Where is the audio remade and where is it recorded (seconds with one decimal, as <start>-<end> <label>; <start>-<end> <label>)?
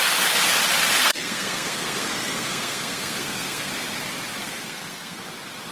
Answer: 0.0-1.0 recorded; 1.0-3.7 remade; 3.7-4.4 recorded; 4.4-5.3 remade; 5.3-5.7 recorded